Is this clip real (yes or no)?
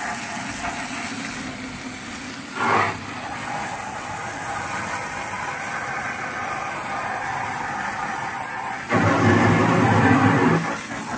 yes